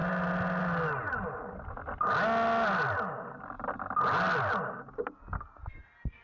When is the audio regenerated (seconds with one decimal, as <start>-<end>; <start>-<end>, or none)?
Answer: none